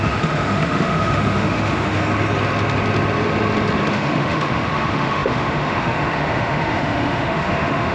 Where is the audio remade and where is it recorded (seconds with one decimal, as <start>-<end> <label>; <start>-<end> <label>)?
0.0-2.0 remade; 2.0-3.9 recorded; 3.9-7.9 remade